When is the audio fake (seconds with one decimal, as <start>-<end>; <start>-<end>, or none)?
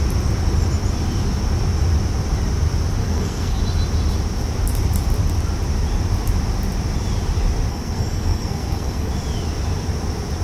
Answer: 3.0-3.6; 7.7-9.1